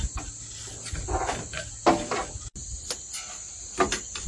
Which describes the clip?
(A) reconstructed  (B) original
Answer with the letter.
B